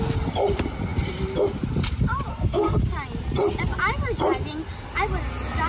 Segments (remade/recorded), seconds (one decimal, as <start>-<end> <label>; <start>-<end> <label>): 0.0-2.3 recorded; 2.3-2.8 remade; 2.8-5.7 recorded